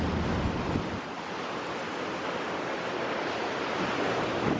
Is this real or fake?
real